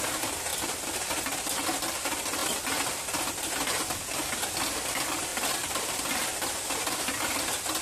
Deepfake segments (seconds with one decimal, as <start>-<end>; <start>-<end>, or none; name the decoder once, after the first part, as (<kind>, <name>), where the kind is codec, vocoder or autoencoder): 5.3-6.0 (vocoder, BigVGAN v2)